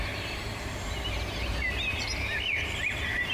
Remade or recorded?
remade